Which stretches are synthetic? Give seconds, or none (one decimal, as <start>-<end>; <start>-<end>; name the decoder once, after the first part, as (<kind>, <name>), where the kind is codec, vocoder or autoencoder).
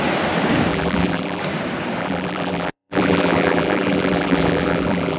0.7-1.4 (vocoder, BigVGAN v2); 2.0-5.2